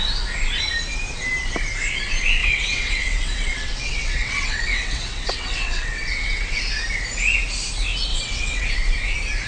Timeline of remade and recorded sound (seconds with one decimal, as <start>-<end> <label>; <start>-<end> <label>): 0.0-2.4 recorded; 2.4-6.6 remade; 6.6-8.1 recorded; 8.1-8.7 remade; 8.7-9.5 recorded